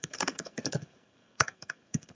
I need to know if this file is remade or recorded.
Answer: remade